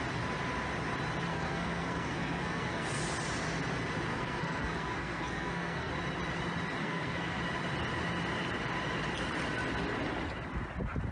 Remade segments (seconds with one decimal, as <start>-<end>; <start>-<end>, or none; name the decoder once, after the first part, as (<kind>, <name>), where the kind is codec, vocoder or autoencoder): 1.3-3.0 (codec, SNAC); 4.1-5.9; 6.8-7.4